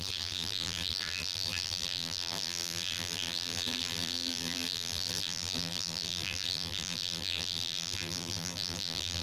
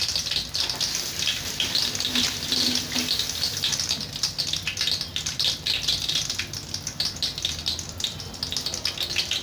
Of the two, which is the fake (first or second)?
first